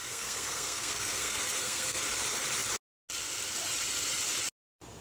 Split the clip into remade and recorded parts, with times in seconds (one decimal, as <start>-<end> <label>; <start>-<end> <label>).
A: 0.0-2.0 remade; 2.0-5.0 recorded